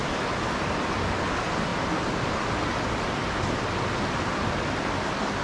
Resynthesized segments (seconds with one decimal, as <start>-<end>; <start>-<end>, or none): none